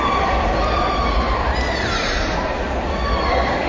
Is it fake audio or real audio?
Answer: fake